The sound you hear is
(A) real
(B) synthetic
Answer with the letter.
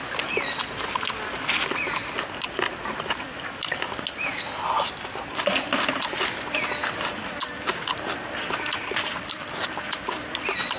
A